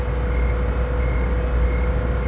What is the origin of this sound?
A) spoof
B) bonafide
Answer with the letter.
B